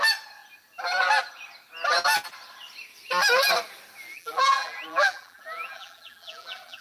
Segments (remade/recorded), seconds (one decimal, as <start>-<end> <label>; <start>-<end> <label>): 0.0-4.1 recorded; 4.1-6.8 remade